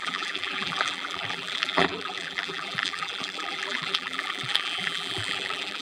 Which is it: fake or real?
fake